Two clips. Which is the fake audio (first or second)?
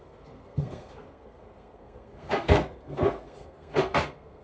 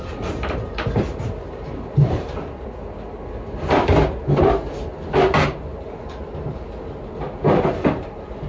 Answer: first